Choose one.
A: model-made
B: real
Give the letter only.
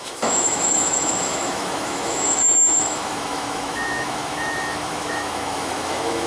A